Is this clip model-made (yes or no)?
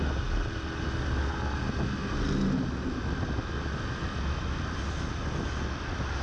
no